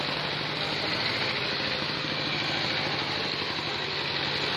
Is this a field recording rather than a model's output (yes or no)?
yes